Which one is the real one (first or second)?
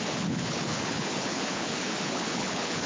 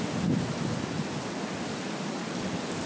second